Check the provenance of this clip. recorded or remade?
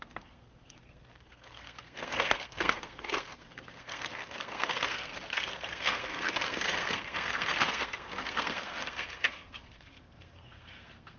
remade